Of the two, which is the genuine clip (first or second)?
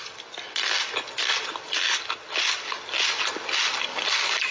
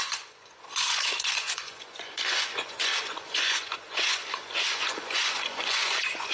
first